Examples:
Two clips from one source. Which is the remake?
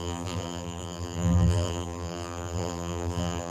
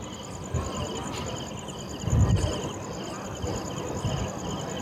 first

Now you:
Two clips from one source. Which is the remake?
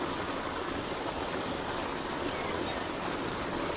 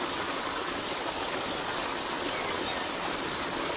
second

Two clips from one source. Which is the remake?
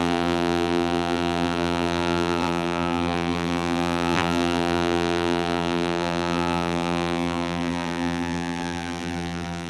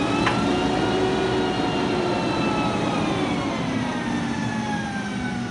first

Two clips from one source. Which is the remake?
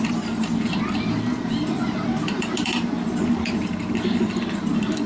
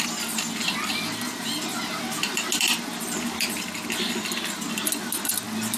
first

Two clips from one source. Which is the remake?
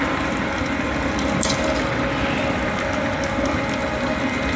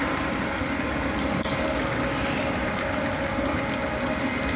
second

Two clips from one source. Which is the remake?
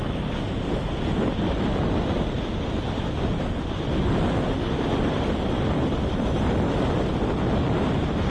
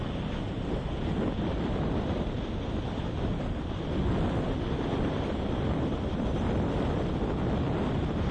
second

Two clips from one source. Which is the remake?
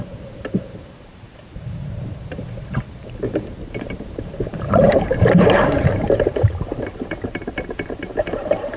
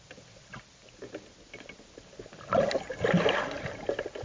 first